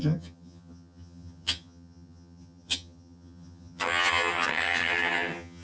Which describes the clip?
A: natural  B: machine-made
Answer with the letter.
B